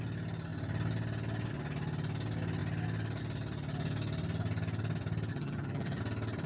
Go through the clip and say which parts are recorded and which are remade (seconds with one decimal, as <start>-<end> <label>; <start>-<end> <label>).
0.0-5.3 recorded; 5.3-6.0 remade; 6.0-6.5 recorded